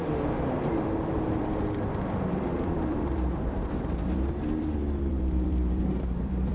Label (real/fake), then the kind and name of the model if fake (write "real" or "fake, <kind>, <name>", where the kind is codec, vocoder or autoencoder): fake, vocoder, BigVGAN v2